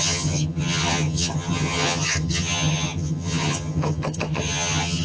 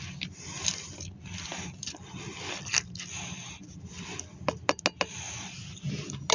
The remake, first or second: first